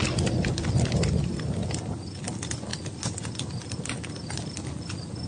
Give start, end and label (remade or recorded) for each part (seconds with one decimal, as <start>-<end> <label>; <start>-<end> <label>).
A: 0.0-5.3 recorded